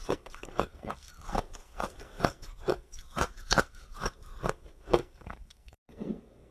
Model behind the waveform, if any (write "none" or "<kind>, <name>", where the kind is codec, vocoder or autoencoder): codec, SNAC